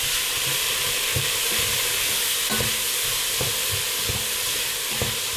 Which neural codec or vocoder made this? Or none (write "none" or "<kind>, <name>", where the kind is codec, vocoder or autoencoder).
none